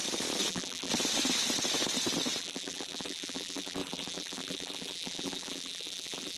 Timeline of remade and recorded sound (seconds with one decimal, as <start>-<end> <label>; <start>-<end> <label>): 0.0-0.5 recorded; 0.5-0.9 remade; 0.9-2.4 recorded; 2.4-6.4 remade